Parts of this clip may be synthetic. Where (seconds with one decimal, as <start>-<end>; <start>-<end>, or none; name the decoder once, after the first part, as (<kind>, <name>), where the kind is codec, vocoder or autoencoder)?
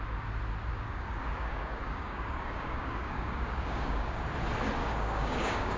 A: 0.7-4.2 (codec, DAC); 4.8-5.8